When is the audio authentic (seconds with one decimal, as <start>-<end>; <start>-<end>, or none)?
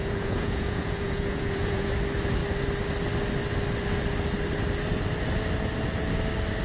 1.9-6.6